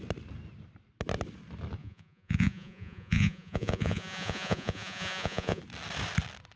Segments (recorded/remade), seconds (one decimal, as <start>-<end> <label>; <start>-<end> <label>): 0.0-1.8 recorded; 1.8-5.6 remade; 5.6-6.6 recorded